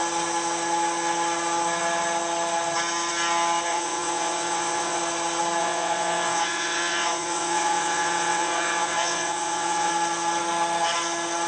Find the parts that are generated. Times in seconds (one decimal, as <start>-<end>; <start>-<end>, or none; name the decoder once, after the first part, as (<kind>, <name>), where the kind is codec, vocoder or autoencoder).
3.7-5.0 (vocoder, WaveNeXt); 5.6-9.9